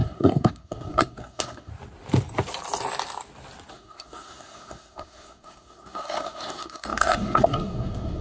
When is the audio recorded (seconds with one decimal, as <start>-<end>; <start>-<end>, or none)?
1.7-3.7